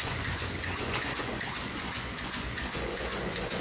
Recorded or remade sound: remade